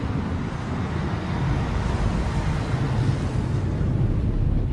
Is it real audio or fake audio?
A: real